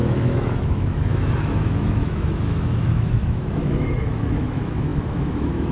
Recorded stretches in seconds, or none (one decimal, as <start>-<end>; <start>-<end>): none